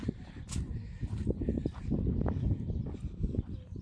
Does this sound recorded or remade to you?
recorded